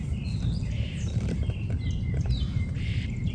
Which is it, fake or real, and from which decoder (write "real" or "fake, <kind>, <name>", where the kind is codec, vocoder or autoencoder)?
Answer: fake, vocoder, BigVGAN v2